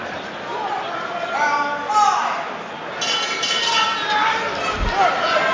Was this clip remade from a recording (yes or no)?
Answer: no